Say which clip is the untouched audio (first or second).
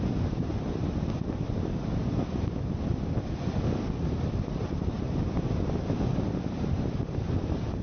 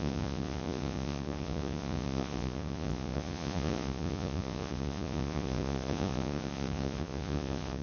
first